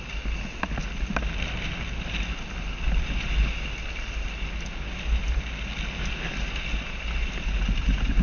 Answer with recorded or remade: recorded